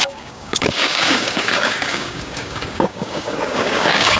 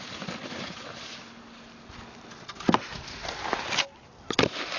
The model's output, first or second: first